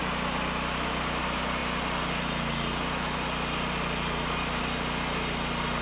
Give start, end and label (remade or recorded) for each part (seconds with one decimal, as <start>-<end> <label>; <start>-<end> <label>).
0.0-5.8 recorded